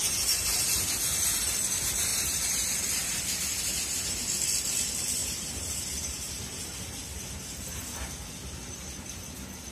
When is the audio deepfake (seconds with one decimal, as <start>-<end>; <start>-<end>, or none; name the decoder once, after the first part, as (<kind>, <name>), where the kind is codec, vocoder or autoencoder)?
2.1-4.2 (vocoder, BigVGAN v2); 5.2-6.3